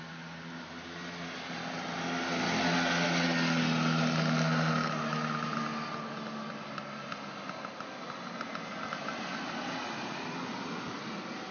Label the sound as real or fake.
real